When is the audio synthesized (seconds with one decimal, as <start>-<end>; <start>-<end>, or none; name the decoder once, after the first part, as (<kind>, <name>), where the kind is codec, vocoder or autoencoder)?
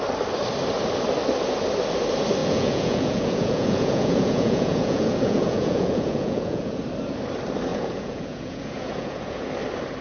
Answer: 2.4-6.8 (vocoder, Vocos); 7.7-9.5